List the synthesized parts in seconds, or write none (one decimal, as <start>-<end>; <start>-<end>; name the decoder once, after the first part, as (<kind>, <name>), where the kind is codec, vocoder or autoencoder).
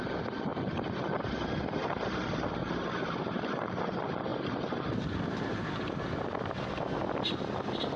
2.6-3.8 (vocoder, BigVGAN v2); 4.3-5.7